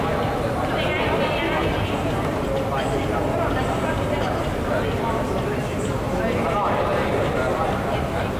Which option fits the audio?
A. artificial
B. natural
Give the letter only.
B